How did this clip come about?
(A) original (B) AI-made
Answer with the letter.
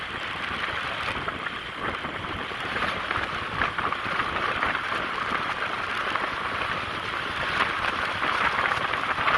B